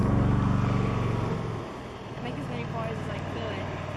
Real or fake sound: real